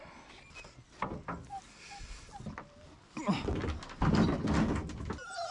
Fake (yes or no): no